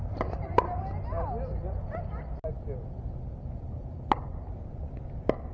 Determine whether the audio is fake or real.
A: real